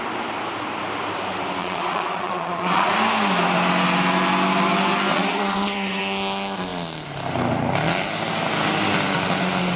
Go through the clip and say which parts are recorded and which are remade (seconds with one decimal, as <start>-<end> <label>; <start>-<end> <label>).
0.0-1.6 recorded; 1.6-2.9 remade; 2.9-5.1 recorded; 5.1-6.0 remade; 6.0-9.8 recorded